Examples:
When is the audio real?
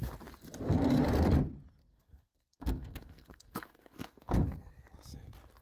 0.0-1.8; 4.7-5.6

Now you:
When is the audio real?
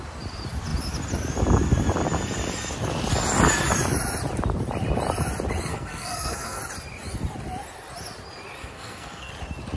0.0-5.7; 6.6-8.6; 9.3-9.8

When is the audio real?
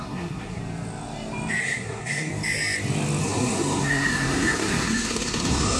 0.6-1.6; 2.3-3.2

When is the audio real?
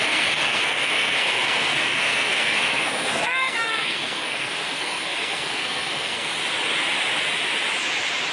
6.3-8.3